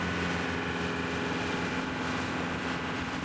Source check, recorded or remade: recorded